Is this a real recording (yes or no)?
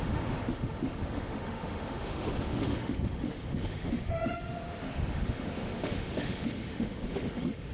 no